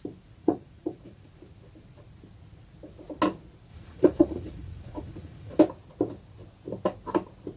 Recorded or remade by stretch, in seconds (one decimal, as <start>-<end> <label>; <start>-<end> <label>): 0.0-0.4 recorded; 0.4-1.3 remade; 1.3-3.7 recorded; 3.7-5.6 remade; 5.6-7.6 recorded

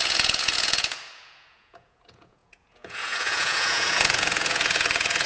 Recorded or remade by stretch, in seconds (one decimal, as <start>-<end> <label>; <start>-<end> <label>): 0.0-5.3 remade

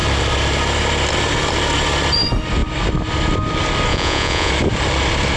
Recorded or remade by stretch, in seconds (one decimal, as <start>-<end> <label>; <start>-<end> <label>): 0.0-3.9 recorded; 3.9-4.5 remade; 4.5-5.4 recorded

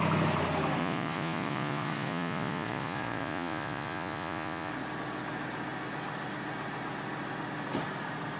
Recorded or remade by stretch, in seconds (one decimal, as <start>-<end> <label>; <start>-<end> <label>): 0.0-0.8 recorded; 0.8-4.7 remade; 4.7-8.4 recorded

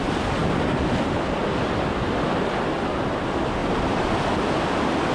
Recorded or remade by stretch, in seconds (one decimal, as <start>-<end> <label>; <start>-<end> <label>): 0.0-5.1 recorded

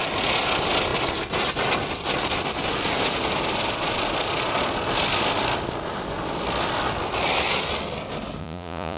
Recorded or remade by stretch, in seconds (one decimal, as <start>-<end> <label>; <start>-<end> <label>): 0.0-8.4 recorded; 8.4-9.0 remade

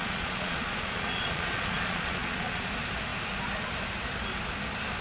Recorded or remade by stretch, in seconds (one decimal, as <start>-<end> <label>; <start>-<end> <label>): 0.0-2.7 remade; 2.7-5.0 recorded